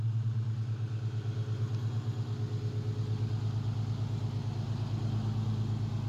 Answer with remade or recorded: recorded